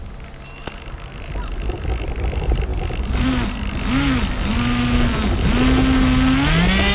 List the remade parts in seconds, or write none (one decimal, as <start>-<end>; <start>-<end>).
none